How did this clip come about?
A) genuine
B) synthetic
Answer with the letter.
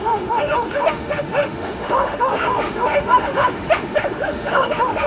B